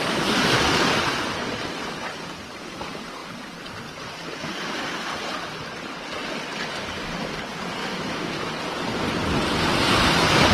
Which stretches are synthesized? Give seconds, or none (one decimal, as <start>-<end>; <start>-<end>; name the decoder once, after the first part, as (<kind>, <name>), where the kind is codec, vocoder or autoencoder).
7.8-8.5 (autoencoder, DAC-VAE)